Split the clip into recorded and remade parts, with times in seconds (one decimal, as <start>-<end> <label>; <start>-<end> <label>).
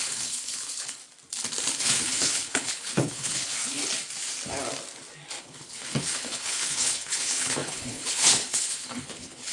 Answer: 0.0-1.0 remade; 1.0-1.8 recorded; 1.8-3.8 remade; 3.8-5.4 recorded; 5.4-9.5 remade